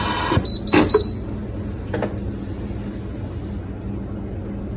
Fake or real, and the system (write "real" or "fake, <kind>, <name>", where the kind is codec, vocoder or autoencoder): real